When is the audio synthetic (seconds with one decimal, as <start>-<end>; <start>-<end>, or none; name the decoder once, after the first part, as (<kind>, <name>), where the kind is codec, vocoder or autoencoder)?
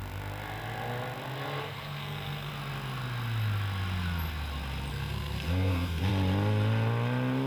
1.6-2.5 (codec, SNAC); 4.9-6.1